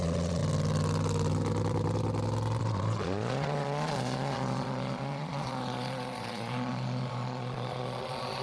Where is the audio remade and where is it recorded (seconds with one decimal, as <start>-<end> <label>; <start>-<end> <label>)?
0.0-0.4 remade; 0.4-2.6 recorded; 2.6-8.4 remade